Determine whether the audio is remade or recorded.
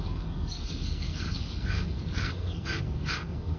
remade